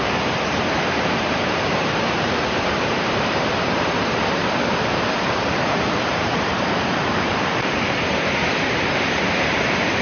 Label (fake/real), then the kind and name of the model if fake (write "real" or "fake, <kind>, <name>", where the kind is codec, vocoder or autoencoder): fake, vocoder, BigVGAN v2